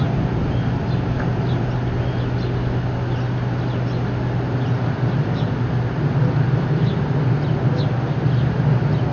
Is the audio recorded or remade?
recorded